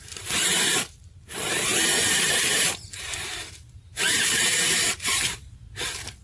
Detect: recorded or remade remade